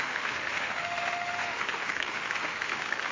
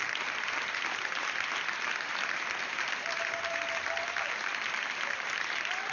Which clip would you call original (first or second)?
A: second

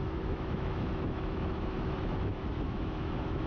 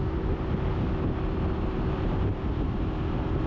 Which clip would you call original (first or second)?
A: second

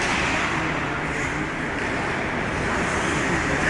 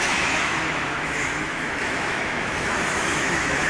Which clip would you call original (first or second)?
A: first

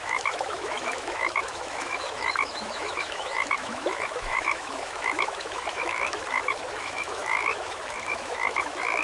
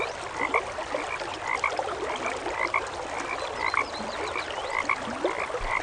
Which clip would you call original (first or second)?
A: second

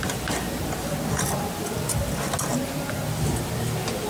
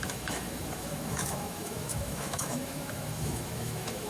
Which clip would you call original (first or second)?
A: first